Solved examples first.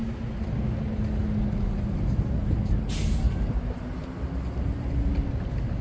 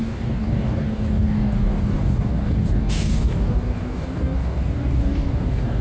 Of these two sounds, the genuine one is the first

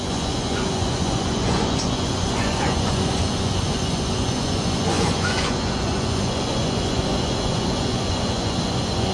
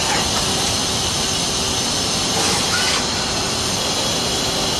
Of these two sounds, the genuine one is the second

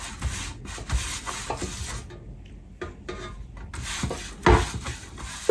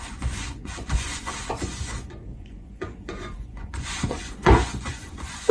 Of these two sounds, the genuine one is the first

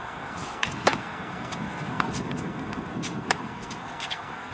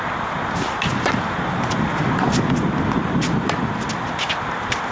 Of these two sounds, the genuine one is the second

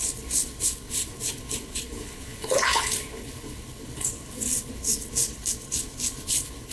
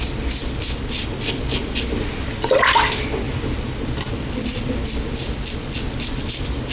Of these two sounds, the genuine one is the second